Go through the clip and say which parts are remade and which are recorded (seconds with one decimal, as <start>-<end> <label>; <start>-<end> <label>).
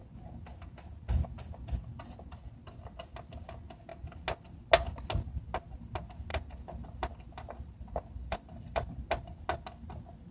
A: 0.0-6.3 recorded; 6.3-8.9 remade; 8.9-10.3 recorded